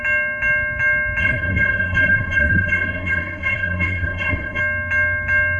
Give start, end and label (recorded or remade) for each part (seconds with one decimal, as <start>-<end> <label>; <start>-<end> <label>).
0.0-1.2 recorded; 1.2-4.6 remade; 4.6-5.6 recorded